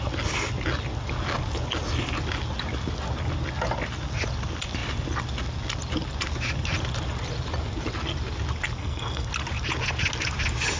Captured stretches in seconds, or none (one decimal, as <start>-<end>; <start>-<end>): 0.0-8.8; 9.3-10.8